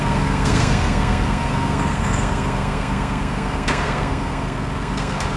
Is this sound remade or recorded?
remade